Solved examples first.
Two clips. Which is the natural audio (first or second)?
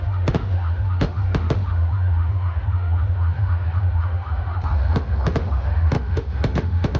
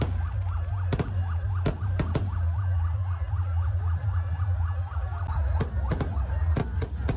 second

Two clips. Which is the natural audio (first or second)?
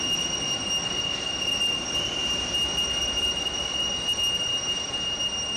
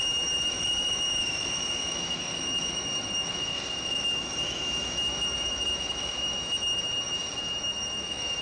first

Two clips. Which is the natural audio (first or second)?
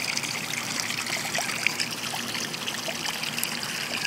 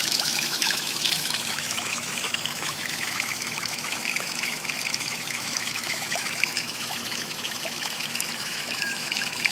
first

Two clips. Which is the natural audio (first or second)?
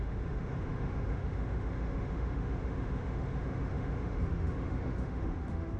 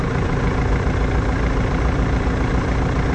second